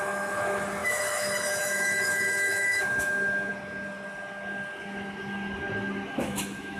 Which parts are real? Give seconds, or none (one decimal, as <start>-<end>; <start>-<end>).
3.5-6.1